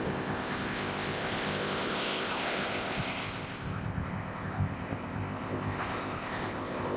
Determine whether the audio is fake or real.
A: fake